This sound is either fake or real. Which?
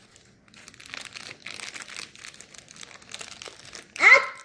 real